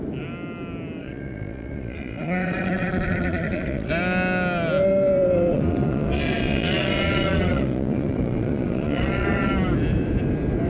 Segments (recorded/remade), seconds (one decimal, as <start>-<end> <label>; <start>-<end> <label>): 0.0-1.0 recorded; 1.0-3.9 remade; 3.9-5.5 recorded; 5.5-9.5 remade; 9.5-10.7 recorded